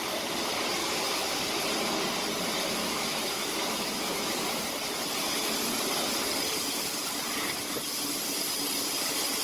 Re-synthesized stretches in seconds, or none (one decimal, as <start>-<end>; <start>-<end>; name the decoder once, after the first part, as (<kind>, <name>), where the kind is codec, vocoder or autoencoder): 0.8-1.4 (autoencoder, DAC-VAE); 2.8-4.3